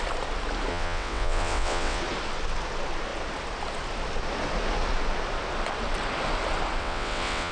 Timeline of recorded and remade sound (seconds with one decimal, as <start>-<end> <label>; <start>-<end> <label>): 0.0-0.7 recorded; 0.7-2.0 remade; 2.0-6.8 recorded; 6.8-7.5 remade